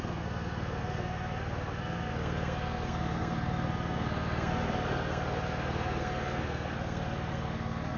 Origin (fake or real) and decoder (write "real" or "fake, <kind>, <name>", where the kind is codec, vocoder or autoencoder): fake, codec, SNAC